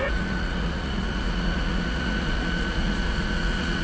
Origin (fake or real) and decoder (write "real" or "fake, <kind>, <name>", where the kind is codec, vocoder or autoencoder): fake, vocoder, Vocos